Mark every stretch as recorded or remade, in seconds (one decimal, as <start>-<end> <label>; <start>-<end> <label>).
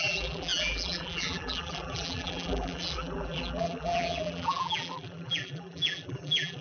0.0-6.6 remade